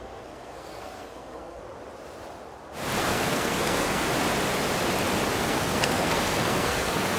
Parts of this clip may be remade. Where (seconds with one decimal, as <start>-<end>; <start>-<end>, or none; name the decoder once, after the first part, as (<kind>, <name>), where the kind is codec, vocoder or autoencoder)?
0.0-1.6 (codec, SNAC); 3.0-4.1; 5.4-7.2